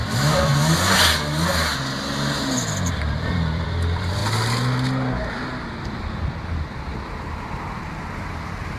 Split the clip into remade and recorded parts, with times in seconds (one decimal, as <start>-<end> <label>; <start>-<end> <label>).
0.0-0.5 remade; 0.5-2.9 recorded; 2.9-4.2 remade; 4.2-5.4 recorded; 5.4-8.8 remade